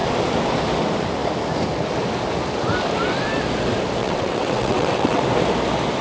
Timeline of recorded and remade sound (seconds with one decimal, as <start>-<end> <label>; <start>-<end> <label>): 0.0-4.0 recorded; 4.0-5.2 remade; 5.2-6.0 recorded